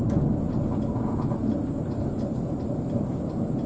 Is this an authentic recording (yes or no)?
yes